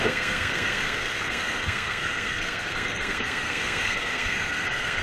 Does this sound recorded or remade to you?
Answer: remade